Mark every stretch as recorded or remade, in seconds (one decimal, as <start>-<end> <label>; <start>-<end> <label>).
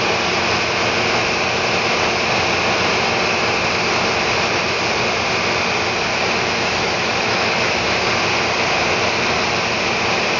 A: 0.0-6.1 recorded; 6.1-7.8 remade; 7.8-10.4 recorded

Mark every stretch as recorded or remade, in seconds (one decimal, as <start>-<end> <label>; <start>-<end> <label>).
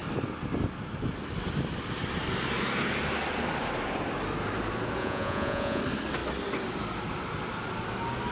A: 0.0-5.0 recorded; 5.0-5.8 remade; 5.8-8.3 recorded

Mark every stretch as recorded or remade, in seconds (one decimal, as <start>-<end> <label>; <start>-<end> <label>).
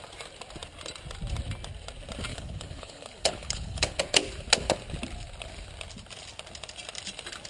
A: 0.0-2.3 recorded; 2.3-4.0 remade; 4.0-7.5 recorded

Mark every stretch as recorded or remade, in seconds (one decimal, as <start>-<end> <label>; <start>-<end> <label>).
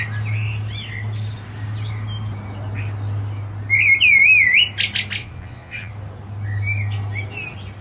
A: 0.0-5.2 recorded; 5.2-5.9 remade; 5.9-7.8 recorded